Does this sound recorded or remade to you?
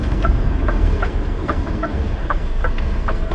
remade